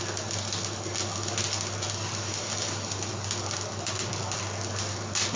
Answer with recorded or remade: recorded